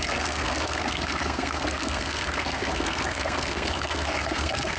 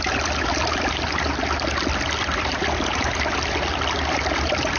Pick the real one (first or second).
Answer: second